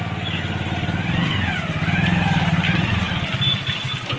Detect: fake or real real